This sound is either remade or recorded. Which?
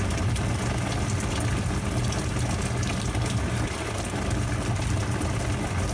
recorded